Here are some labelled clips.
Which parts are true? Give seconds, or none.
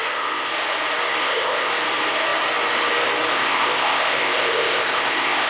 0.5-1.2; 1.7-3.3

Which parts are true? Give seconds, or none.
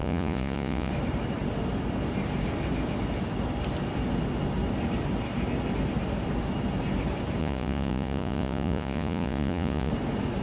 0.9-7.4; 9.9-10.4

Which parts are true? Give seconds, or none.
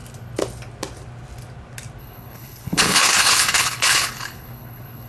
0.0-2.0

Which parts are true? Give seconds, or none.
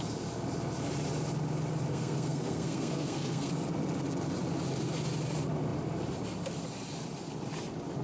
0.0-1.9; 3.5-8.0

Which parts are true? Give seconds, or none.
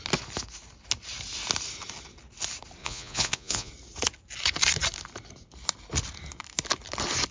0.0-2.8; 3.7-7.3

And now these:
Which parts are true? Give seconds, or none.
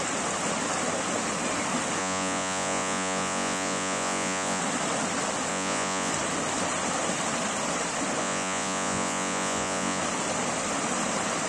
0.0-2.0; 4.6-5.5; 6.1-8.2; 10.0-11.5